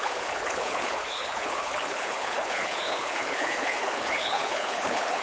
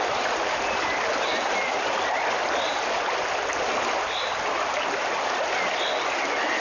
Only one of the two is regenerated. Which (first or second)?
first